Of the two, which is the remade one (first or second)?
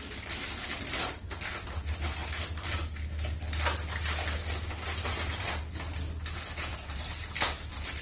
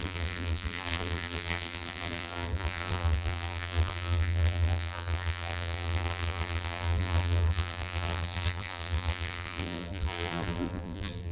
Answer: second